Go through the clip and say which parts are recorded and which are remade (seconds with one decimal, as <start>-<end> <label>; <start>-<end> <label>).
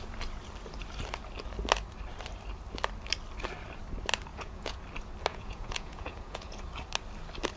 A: 0.0-4.3 recorded; 4.3-4.8 remade; 4.8-5.3 recorded; 5.3-6.6 remade; 6.6-7.6 recorded